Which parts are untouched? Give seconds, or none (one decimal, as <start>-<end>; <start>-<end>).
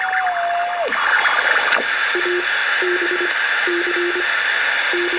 0.0-2.6; 4.3-5.2